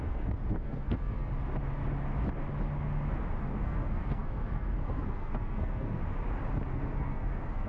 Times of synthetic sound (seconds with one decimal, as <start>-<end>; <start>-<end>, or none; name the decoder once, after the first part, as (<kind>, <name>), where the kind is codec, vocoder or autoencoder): 0.0-1.3 (codec, SNAC); 3.4-6.0; 6.7-7.7